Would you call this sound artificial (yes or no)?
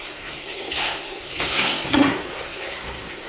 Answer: yes